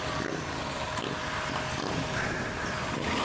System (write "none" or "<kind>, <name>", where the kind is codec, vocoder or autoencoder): none